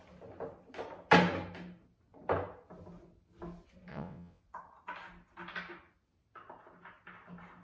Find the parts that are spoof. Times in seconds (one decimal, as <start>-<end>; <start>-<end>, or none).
3.9-4.4